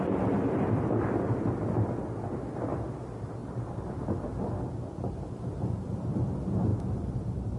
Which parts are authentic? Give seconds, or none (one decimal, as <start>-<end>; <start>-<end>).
0.0-3.4; 3.9-5.5; 6.2-6.7